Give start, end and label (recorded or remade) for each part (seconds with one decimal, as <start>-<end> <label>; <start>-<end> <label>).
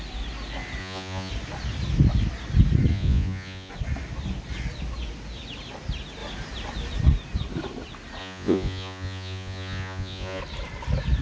0.0-0.8 recorded; 0.8-1.3 remade; 1.3-2.9 recorded; 2.9-3.7 remade; 3.7-8.2 recorded; 8.2-10.4 remade; 10.4-11.2 recorded